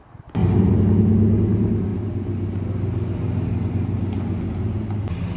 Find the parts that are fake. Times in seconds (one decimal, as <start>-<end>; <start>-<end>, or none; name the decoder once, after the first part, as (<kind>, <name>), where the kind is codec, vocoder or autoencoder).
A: 0.4-1.0 (vocoder, BigVGAN v2)